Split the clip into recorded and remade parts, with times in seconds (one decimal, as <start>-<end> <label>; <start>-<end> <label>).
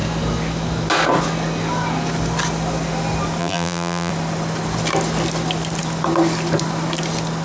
0.0-3.4 recorded; 3.4-4.1 remade; 4.1-7.4 recorded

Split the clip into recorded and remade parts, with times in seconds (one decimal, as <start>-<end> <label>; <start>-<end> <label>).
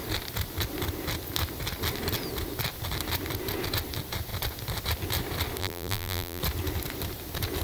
0.0-5.6 recorded; 5.6-6.4 remade; 6.4-7.6 recorded